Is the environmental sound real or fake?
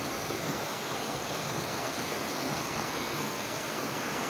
fake